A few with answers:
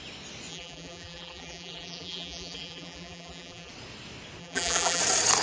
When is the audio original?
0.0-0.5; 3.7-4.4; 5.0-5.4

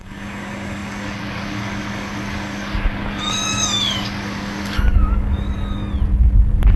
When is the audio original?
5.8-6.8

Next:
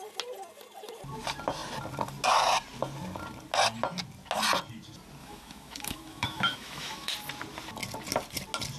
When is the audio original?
0.0-5.2; 7.1-8.8